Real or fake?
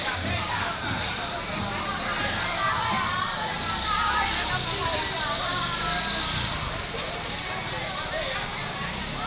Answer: real